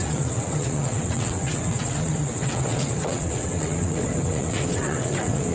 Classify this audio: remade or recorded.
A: remade